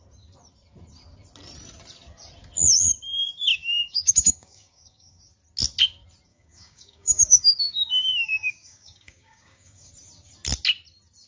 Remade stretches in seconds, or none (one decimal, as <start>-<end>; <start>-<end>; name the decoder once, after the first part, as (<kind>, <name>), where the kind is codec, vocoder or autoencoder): 3.5-5.2 (codec, DAC); 6.3-9.9